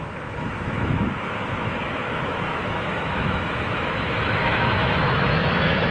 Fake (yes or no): yes